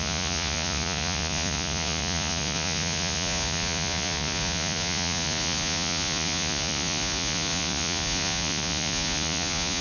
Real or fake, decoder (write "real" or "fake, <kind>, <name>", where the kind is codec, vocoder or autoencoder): fake, vocoder, Vocos